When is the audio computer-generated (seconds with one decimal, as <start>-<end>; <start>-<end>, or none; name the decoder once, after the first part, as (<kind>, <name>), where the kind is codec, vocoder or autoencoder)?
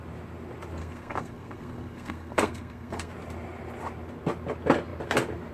0.8-3.1 (codec, SNAC)